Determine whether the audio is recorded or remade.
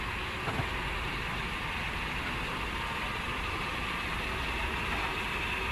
recorded